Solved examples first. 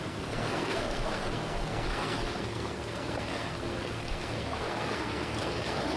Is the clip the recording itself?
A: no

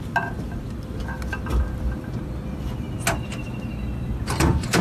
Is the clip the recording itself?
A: yes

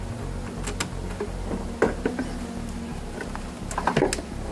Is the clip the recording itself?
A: yes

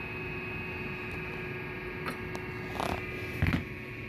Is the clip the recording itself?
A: yes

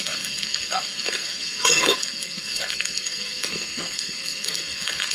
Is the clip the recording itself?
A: no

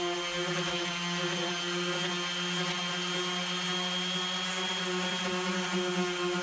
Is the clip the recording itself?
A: yes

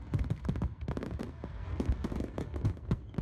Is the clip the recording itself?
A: no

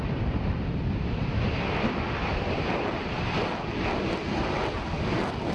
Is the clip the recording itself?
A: yes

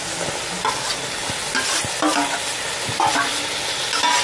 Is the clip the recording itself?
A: yes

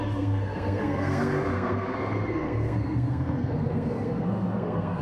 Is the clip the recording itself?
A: no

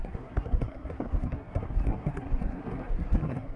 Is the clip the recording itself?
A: no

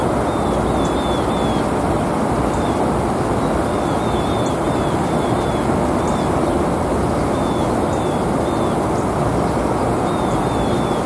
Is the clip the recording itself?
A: yes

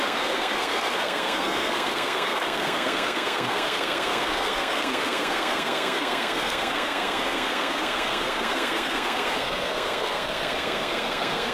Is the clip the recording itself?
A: no